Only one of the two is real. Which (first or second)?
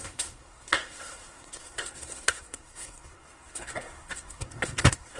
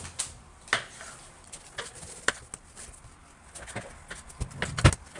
second